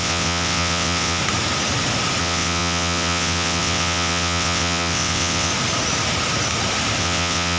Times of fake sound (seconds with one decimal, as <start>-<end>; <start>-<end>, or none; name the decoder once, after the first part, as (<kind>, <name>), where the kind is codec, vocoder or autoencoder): 0.0-1.2 (vocoder, WaveNeXt); 2.2-5.5; 7.0-7.6